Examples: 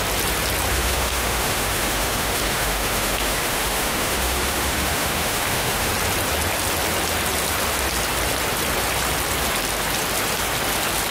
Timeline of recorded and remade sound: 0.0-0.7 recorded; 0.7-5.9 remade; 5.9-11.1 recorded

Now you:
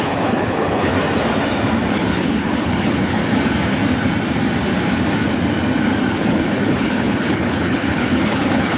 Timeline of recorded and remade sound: 0.0-0.9 remade; 0.9-1.9 recorded; 1.9-3.2 remade; 3.2-6.1 recorded; 6.1-8.8 remade

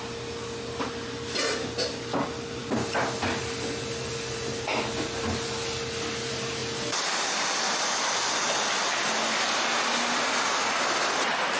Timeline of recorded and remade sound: 0.0-11.6 recorded

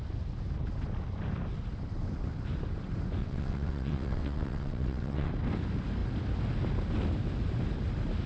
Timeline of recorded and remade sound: 0.0-3.2 recorded; 3.2-5.3 remade; 5.3-8.3 recorded

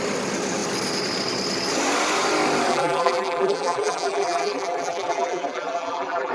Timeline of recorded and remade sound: 0.0-2.7 recorded; 2.7-6.3 remade

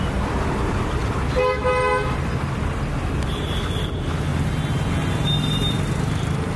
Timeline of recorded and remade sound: 0.0-6.6 recorded